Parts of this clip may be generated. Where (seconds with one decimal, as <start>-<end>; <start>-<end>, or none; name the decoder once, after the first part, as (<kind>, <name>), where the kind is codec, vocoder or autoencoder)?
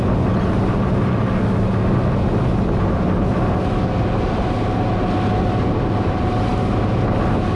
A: none